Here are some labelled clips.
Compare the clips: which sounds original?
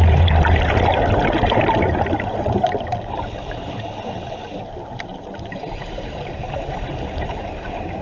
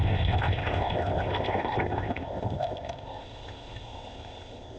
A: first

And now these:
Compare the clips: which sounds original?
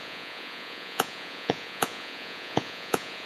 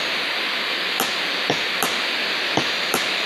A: second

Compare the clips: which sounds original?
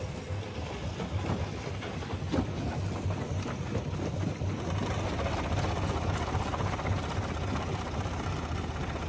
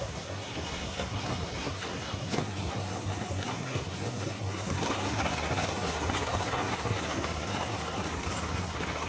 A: first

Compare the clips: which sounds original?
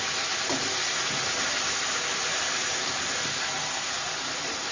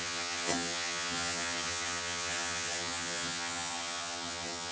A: first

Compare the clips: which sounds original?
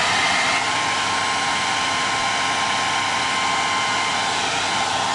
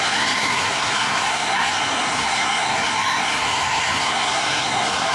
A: first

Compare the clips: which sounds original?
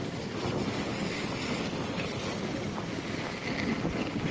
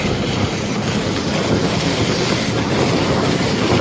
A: first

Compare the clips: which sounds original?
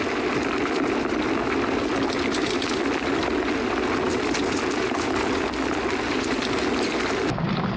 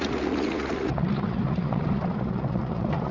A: first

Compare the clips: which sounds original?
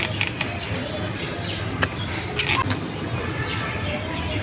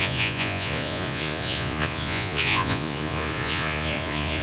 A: first